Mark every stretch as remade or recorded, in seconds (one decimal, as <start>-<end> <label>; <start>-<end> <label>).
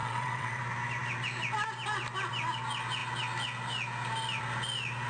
0.0-0.6 remade; 0.6-5.1 recorded